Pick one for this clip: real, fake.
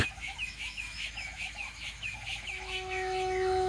fake